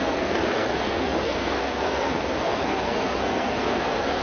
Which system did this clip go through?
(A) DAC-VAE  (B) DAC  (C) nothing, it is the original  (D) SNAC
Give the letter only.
D